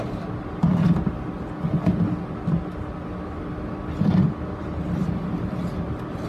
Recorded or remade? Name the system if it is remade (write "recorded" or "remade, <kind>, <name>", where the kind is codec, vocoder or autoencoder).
recorded